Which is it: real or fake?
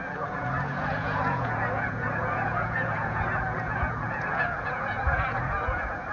fake